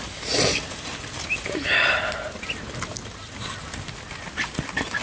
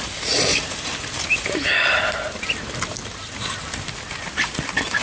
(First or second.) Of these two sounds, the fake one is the second